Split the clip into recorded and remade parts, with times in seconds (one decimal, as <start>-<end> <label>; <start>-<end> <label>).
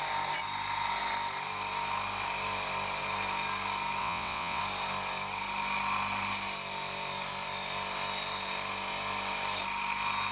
0.0-4.0 recorded; 4.0-4.6 remade; 4.6-10.3 recorded